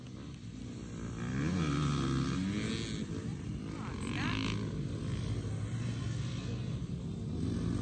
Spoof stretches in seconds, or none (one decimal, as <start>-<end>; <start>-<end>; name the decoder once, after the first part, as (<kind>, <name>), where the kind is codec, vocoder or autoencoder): none